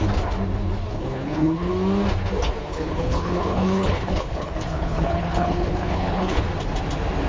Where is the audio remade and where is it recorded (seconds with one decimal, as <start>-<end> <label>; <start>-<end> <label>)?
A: 0.0-0.9 recorded; 0.9-1.7 remade; 1.7-2.7 recorded; 2.7-6.4 remade; 6.4-7.3 recorded